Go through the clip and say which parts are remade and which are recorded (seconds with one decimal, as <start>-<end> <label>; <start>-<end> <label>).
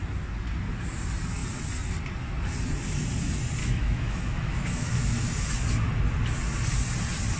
0.0-3.6 recorded; 3.6-5.2 remade; 5.2-7.4 recorded